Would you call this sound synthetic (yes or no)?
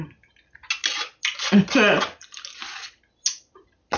no